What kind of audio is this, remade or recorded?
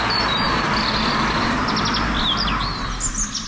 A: recorded